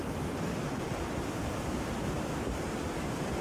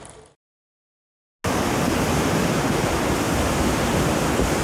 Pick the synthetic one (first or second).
first